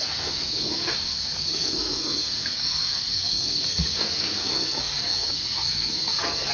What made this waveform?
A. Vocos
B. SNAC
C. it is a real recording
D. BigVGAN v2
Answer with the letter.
B